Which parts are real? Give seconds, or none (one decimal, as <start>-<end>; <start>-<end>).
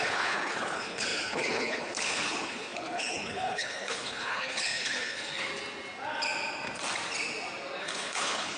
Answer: 5.5-7.8